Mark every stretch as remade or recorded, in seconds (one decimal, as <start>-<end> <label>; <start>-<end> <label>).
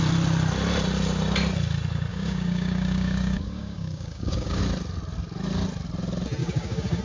0.0-2.1 recorded; 2.1-4.6 remade; 4.6-6.4 recorded; 6.4-7.0 remade